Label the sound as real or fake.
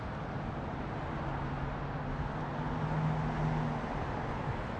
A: real